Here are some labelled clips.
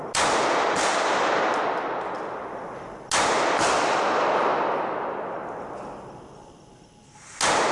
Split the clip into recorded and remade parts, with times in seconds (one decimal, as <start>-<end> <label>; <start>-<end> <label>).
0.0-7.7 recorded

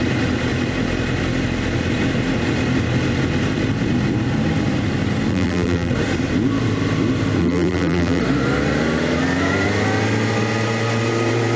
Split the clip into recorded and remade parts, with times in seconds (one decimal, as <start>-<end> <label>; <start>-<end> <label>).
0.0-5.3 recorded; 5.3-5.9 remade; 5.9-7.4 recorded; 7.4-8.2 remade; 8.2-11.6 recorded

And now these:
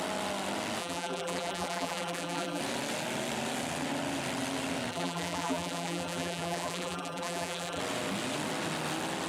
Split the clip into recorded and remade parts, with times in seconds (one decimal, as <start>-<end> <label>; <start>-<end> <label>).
0.0-0.8 recorded; 0.8-2.6 remade; 2.6-4.9 recorded; 4.9-7.8 remade; 7.8-9.3 recorded

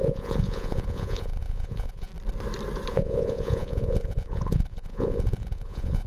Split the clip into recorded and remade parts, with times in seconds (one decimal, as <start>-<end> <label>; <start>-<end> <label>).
0.0-2.1 remade; 2.1-2.9 recorded; 2.9-6.1 remade

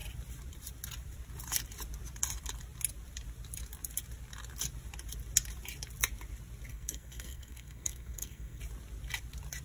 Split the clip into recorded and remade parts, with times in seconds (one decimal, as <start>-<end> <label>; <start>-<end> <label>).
0.0-6.7 recorded; 6.7-8.6 remade; 8.6-9.6 recorded

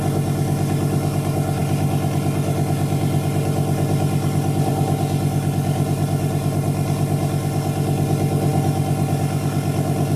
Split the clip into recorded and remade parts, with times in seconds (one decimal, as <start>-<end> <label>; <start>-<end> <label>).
0.0-10.2 recorded

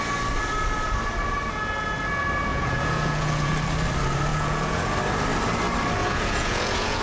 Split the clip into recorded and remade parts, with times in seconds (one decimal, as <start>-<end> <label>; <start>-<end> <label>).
0.0-2.5 recorded; 2.5-3.5 remade; 3.5-4.3 recorded; 4.3-4.9 remade; 4.9-6.0 recorded; 6.0-7.0 remade